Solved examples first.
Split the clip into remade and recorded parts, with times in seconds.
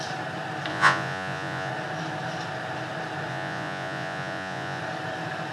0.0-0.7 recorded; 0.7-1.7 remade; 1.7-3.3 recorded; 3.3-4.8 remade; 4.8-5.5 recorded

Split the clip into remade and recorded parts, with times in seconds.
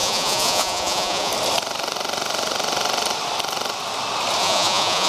0.0-1.3 remade; 1.3-4.4 recorded; 4.4-5.1 remade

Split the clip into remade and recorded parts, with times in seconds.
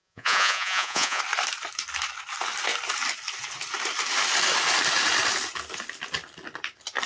0.0-1.2 remade; 1.2-7.1 recorded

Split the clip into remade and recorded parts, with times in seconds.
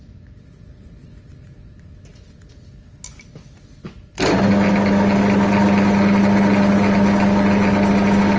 0.0-8.4 recorded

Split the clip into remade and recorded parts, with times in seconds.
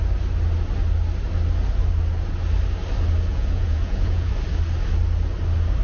0.0-3.3 recorded; 3.3-4.3 remade; 4.3-5.8 recorded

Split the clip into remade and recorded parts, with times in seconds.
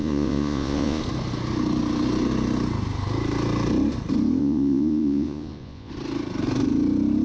0.0-1.0 remade; 1.0-4.4 recorded; 4.4-5.9 remade; 5.9-7.2 recorded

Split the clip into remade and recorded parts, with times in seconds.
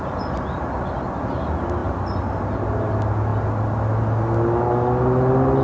0.0-5.6 recorded